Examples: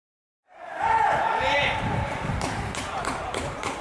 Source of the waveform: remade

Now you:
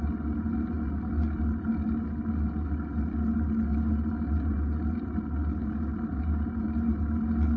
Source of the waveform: recorded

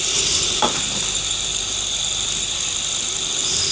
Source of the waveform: recorded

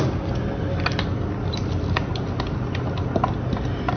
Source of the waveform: recorded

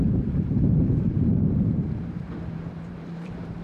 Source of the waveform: remade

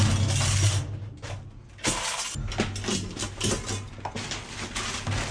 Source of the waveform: recorded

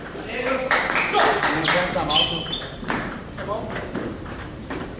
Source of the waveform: remade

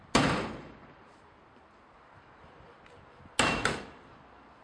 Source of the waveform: recorded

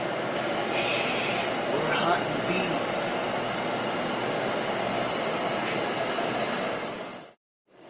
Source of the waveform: recorded